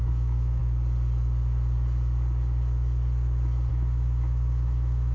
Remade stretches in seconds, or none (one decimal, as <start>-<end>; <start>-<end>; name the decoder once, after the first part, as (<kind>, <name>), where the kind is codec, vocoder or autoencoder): 0.0-0.6 (autoencoder, DAC-VAE); 3.7-5.1